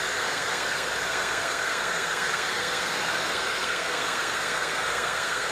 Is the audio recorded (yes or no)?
no